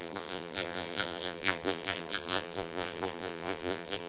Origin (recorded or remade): remade